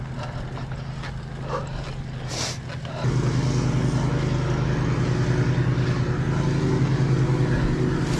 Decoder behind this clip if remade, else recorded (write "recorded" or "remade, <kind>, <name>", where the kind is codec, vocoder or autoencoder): recorded